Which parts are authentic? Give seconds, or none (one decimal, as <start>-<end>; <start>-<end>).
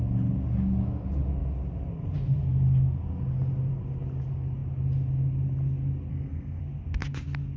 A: 0.0-6.1; 6.6-7.6